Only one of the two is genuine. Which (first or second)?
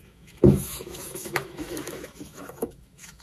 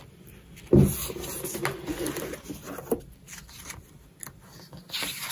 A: second